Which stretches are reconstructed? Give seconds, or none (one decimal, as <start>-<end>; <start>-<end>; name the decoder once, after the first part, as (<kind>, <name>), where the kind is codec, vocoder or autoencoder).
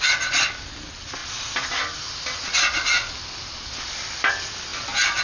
none